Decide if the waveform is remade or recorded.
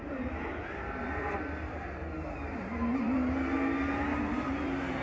recorded